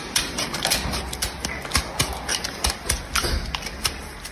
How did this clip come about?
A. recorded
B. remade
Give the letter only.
A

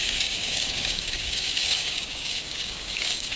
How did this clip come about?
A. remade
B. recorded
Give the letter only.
A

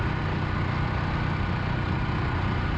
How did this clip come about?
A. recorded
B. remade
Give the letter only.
A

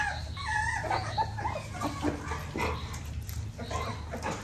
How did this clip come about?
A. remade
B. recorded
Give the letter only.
B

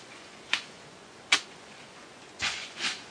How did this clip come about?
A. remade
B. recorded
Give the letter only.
A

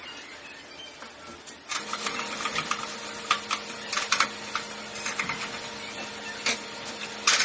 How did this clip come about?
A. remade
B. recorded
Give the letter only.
B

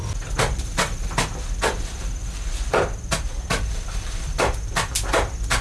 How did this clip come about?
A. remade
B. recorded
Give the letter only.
B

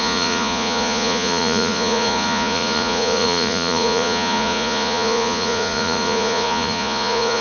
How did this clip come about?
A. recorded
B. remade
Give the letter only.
B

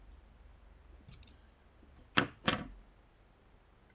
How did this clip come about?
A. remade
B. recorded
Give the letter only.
B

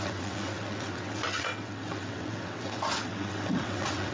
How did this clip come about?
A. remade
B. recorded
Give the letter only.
A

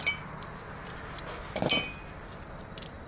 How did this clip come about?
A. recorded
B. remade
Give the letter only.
A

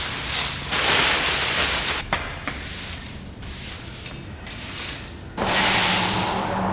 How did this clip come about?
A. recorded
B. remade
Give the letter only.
A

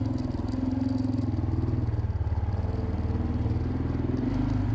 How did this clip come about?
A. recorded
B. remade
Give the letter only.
A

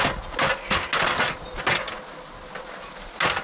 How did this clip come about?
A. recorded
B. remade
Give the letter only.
A